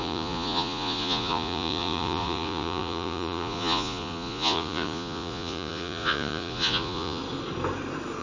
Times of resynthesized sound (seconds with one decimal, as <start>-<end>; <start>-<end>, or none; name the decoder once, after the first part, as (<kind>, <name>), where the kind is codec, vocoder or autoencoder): 0.0-7.2 (vocoder, Vocos)